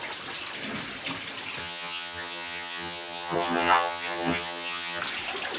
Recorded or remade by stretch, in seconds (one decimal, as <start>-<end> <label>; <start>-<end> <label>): 0.0-1.6 recorded; 1.6-5.0 remade; 5.0-5.6 recorded